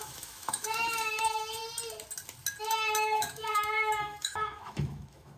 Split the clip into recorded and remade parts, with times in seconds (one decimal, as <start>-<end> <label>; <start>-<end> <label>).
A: 0.0-1.6 remade; 1.6-2.6 recorded; 2.6-5.4 remade